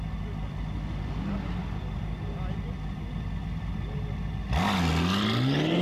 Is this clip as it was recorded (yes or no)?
yes